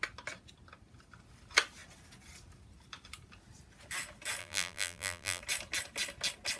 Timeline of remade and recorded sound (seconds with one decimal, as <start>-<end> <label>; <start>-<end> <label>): 0.0-4.4 recorded; 4.4-5.4 remade; 5.4-6.6 recorded